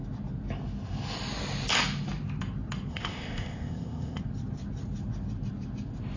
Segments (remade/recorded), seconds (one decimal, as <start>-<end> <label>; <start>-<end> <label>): 0.0-2.9 recorded; 2.9-4.2 remade; 4.2-6.2 recorded